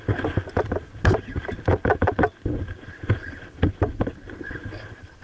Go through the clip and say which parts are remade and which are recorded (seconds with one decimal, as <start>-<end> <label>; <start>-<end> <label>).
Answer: 0.0-1.4 remade; 1.4-2.6 recorded; 2.6-5.2 remade